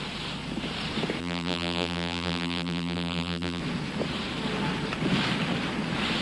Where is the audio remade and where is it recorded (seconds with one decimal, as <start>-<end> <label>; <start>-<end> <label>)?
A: 0.0-1.2 recorded; 1.2-3.6 remade; 3.6-6.2 recorded

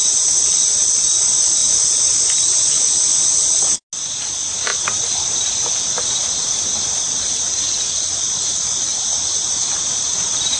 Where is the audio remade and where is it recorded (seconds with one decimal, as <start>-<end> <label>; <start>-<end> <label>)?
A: 0.0-1.6 recorded; 1.6-2.2 remade; 2.2-4.7 recorded; 4.7-9.5 remade; 9.5-10.6 recorded

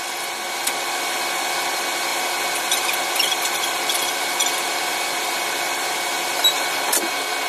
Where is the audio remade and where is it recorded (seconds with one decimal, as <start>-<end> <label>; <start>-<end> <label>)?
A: 0.0-2.1 recorded; 2.1-5.9 remade; 5.9-7.5 recorded

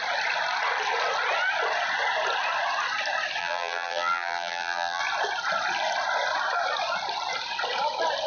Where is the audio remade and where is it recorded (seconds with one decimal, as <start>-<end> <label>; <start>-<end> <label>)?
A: 0.0-3.4 recorded; 3.4-5.0 remade; 5.0-8.3 recorded